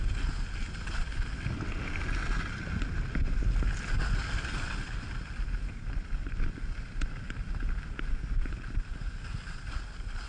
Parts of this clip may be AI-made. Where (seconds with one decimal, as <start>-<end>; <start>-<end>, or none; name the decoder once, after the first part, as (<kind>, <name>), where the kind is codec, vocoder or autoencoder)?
none